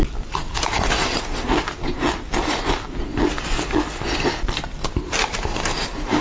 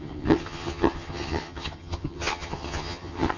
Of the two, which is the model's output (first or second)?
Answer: second